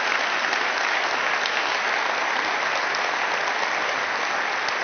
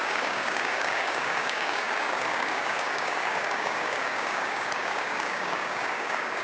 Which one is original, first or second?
first